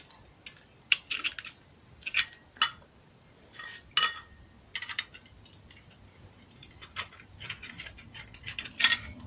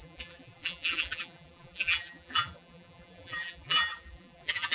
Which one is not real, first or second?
second